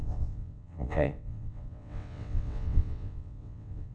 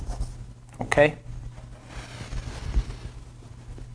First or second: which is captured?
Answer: second